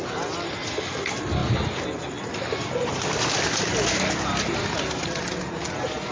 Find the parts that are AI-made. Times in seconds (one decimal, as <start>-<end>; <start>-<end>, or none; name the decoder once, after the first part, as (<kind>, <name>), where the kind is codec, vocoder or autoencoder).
none